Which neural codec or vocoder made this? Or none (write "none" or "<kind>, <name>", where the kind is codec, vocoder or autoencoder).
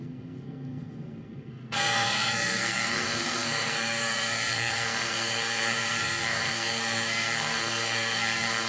codec, SNAC